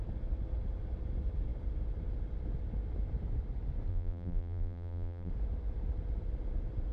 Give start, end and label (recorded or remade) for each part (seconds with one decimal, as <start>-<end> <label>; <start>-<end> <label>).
0.0-3.9 recorded; 3.9-5.3 remade; 5.3-6.9 recorded